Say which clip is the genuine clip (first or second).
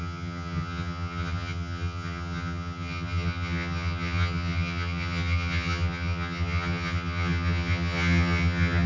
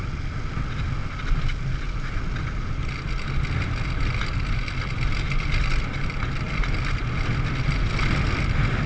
second